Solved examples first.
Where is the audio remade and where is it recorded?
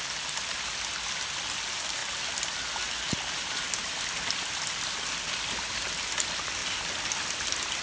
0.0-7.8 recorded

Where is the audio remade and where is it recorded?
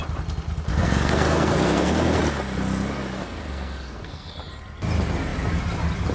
0.0-0.7 recorded; 0.7-2.2 remade; 2.2-3.2 recorded; 3.2-4.4 remade; 4.4-6.1 recorded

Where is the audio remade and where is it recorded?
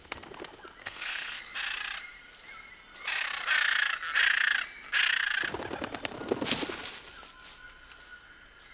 0.0-0.8 recorded; 0.8-1.4 remade; 1.4-8.7 recorded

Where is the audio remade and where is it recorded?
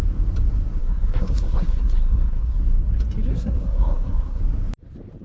0.0-0.8 recorded; 0.8-2.6 remade; 2.6-3.3 recorded; 3.3-4.4 remade; 4.4-5.2 recorded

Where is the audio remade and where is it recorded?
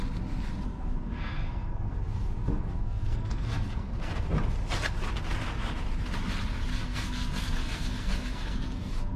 0.0-0.7 recorded; 0.7-4.3 remade; 4.3-6.7 recorded; 6.7-9.2 remade